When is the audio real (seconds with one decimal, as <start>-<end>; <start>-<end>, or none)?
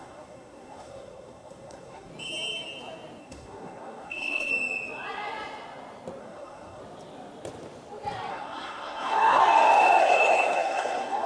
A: 2.1-3.2; 4.5-6.2; 6.8-8.3; 9.4-10.0